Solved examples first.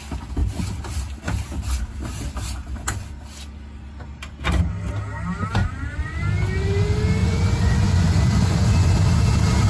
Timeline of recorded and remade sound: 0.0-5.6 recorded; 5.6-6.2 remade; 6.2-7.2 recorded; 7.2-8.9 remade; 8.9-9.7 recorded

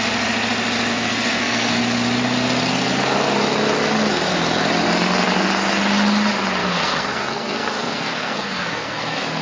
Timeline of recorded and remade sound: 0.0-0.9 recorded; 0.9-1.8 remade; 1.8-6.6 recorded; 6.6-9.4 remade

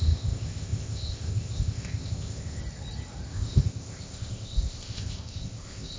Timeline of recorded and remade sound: 0.0-2.6 remade; 2.6-3.3 recorded; 3.3-6.0 remade

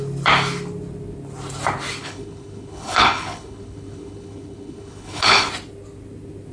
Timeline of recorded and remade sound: 0.0-2.0 recorded; 2.0-5.5 remade; 5.5-6.5 recorded

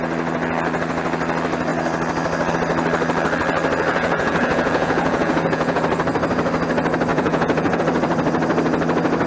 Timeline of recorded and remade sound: 0.0-3.9 recorded; 3.9-5.8 remade; 5.8-7.1 recorded; 7.1-7.8 remade; 7.8-9.3 recorded